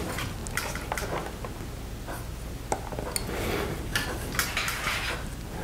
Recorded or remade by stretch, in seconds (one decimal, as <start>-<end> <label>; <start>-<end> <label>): 0.0-5.6 recorded